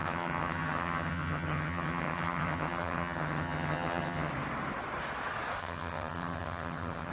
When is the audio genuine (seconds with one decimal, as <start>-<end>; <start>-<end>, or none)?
4.3-5.6